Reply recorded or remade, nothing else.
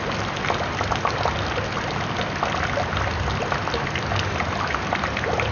recorded